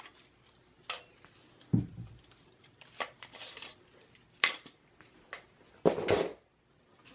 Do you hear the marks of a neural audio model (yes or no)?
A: no